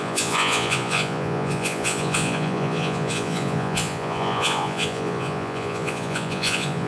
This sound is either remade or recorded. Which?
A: remade